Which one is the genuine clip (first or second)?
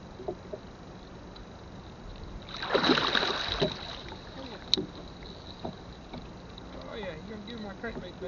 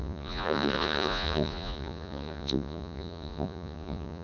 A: first